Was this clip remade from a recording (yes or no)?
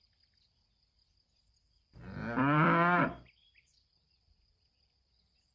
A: yes